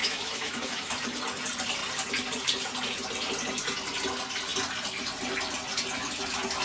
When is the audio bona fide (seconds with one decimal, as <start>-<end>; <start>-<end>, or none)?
0.9-6.6